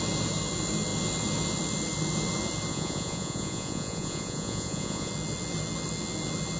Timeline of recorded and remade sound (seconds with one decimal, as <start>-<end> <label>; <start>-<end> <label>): 0.0-2.7 recorded; 2.7-5.1 remade; 5.1-6.6 recorded